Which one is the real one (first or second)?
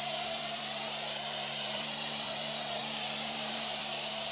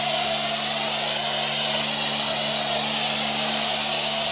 second